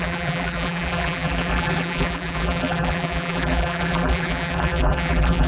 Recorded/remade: remade